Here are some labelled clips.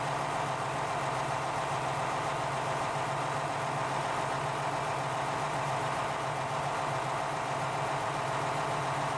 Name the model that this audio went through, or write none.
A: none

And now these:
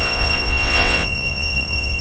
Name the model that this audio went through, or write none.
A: vocoder, WaveNeXt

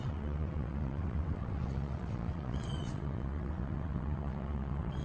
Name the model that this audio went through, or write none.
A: vocoder, WaveNeXt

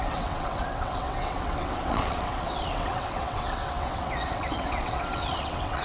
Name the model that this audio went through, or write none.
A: vocoder, WaveNeXt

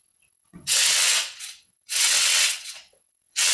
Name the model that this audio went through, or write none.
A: vocoder, WaveNeXt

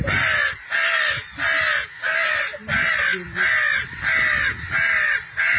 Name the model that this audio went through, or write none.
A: none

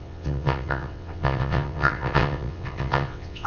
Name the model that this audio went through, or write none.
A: vocoder, WaveNeXt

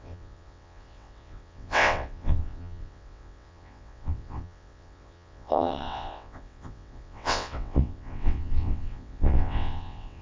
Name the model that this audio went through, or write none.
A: vocoder, WaveNeXt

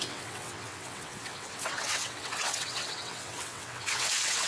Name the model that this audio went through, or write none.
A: vocoder, WaveNeXt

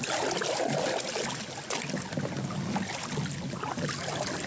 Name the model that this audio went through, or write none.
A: none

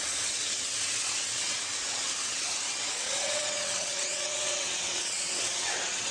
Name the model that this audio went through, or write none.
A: vocoder, WaveNeXt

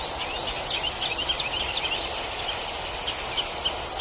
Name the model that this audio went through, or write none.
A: none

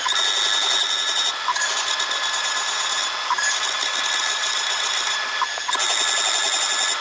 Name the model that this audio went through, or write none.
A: none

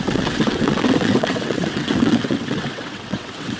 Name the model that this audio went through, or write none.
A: vocoder, WaveNeXt